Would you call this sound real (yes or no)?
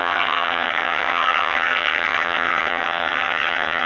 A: no